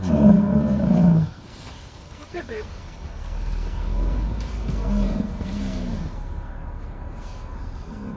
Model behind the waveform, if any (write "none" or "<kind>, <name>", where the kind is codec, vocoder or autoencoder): codec, SNAC